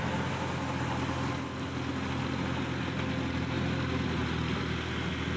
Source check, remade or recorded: recorded